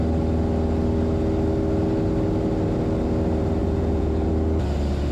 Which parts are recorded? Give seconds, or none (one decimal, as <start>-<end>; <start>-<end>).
0.0-3.6; 4.3-5.1